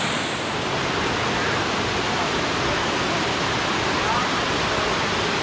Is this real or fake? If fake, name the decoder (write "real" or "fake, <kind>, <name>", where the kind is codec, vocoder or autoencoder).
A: real